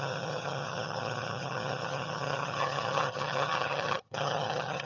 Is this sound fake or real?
fake